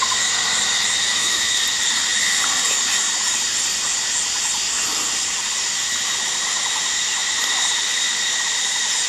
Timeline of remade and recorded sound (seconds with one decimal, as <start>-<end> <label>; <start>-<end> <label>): 0.0-1.1 recorded; 1.1-1.6 remade; 1.6-9.1 recorded